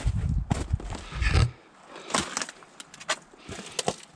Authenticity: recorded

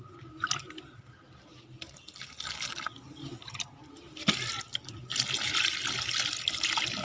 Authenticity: recorded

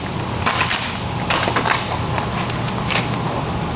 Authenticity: recorded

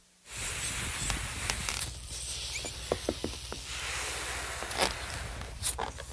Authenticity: recorded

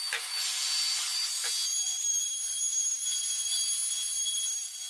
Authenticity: recorded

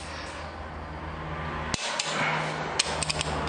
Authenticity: recorded